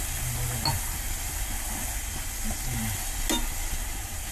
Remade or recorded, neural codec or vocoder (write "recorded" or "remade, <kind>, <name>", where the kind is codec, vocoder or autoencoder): recorded